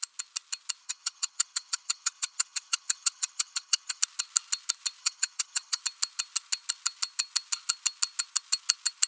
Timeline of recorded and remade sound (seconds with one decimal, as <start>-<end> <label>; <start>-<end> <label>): 0.0-0.8 recorded; 0.8-4.0 remade; 4.0-5.0 recorded; 5.0-5.8 remade; 5.8-9.1 recorded